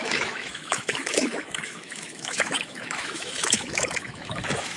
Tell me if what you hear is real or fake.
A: fake